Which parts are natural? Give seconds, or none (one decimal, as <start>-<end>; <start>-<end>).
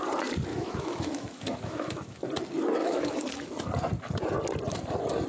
0.0-0.5; 2.2-2.8; 3.5-5.3